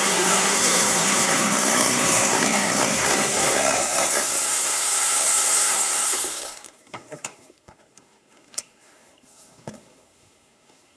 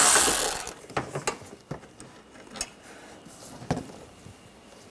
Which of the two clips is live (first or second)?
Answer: second